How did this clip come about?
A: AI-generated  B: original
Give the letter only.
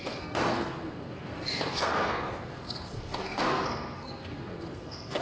A